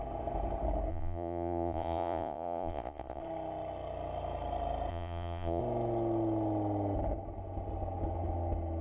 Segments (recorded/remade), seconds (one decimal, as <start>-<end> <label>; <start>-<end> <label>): 0.0-0.9 recorded; 0.9-3.2 remade; 3.2-4.9 recorded; 4.9-5.6 remade; 5.6-8.8 recorded